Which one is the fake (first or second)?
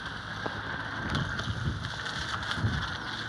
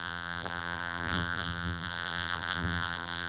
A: second